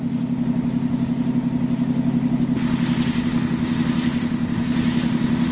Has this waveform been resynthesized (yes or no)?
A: no